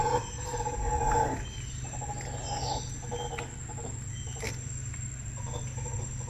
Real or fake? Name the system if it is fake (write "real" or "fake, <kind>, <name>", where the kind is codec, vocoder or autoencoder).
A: real